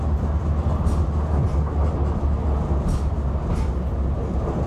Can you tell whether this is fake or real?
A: real